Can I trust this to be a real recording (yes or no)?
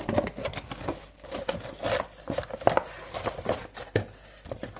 yes